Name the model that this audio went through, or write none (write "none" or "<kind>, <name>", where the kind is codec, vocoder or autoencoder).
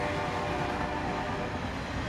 none